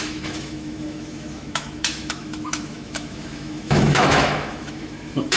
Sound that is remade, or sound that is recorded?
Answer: remade